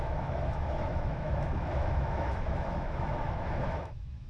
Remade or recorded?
remade